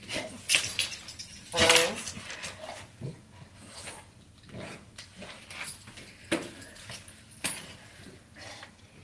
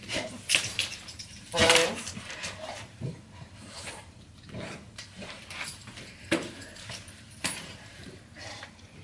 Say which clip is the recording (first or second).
first